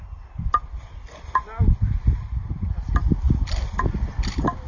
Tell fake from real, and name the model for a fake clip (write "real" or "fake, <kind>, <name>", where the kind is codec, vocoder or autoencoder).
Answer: real